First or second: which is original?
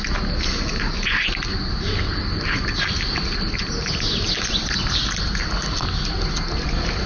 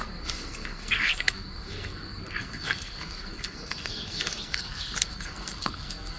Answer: first